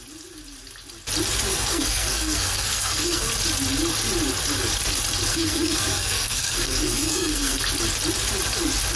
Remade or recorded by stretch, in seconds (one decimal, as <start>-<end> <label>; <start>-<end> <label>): 0.0-1.5 recorded; 1.5-3.3 remade; 3.3-5.3 recorded; 5.3-7.6 remade; 7.6-9.0 recorded